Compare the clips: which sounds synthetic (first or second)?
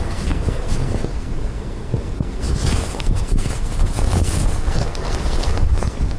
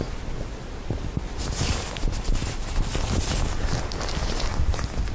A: first